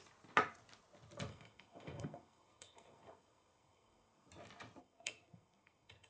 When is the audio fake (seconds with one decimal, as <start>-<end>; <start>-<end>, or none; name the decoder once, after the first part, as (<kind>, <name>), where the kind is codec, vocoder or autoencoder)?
1.3-4.3 (codec, SNAC); 4.8-6.1

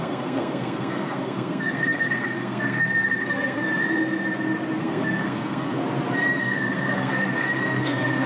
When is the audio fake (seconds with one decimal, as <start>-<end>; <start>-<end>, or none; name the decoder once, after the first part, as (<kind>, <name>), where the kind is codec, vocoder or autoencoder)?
0.0-3.7 (codec, SNAC); 4.8-5.8; 6.4-8.3